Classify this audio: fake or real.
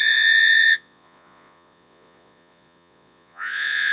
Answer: fake